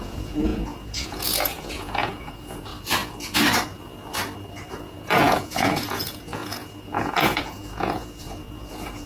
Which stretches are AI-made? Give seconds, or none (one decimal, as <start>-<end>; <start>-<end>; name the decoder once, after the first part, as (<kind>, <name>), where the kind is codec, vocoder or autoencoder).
0.0-2.7 (vocoder, Vocos); 4.7-9.1